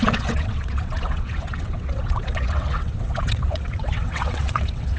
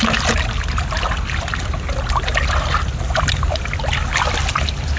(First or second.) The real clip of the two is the second